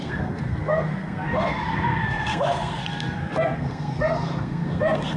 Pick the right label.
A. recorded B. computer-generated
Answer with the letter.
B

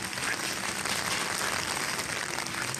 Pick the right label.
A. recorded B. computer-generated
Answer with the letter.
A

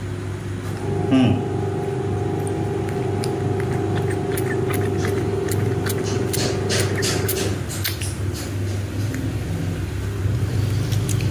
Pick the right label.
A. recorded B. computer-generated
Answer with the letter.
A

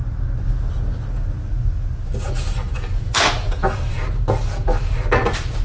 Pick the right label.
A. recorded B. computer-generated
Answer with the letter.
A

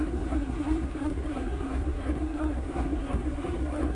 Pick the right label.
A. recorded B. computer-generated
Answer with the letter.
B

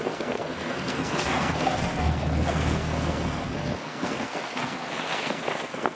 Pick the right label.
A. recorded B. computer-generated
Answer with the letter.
B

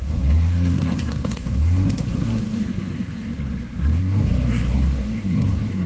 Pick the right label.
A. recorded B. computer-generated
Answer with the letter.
B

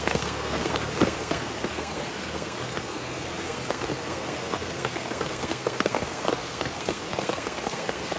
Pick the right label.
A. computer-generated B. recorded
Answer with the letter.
A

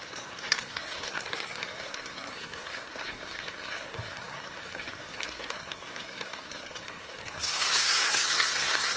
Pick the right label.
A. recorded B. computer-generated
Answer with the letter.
B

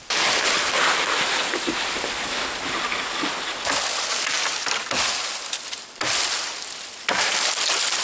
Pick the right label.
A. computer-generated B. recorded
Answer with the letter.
B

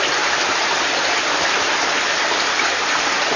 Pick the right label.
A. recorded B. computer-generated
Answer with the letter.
A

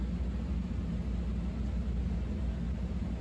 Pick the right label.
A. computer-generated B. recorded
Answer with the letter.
B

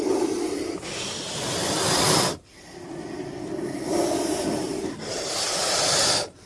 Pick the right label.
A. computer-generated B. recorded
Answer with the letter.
B